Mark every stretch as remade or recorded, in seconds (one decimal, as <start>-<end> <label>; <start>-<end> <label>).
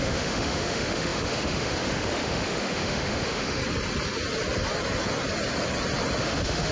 0.0-3.6 remade; 3.6-6.2 recorded; 6.2-6.7 remade